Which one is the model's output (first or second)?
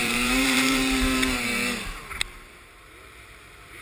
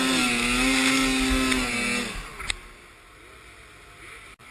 first